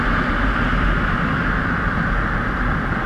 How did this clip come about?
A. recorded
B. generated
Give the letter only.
A